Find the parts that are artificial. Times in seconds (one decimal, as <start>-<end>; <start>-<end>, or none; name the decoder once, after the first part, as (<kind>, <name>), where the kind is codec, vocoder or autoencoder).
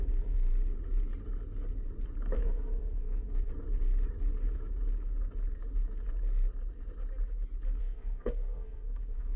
0.0-0.5 (codec, SNAC); 2.4-3.5; 7.8-9.4